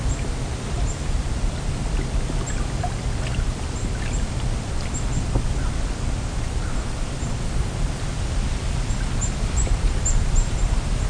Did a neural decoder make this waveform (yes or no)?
yes